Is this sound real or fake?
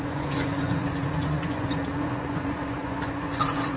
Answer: fake